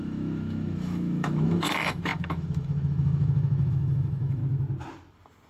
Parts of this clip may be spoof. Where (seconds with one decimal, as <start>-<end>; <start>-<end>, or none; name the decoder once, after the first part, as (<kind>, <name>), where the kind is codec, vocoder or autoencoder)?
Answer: 0.0-4.4 (autoencoder, DAC-VAE)